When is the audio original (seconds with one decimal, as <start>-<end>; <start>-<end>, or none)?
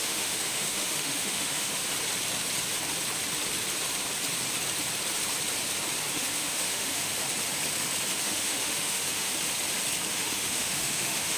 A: 1.8-6.1; 7.1-8.1; 9.3-10.1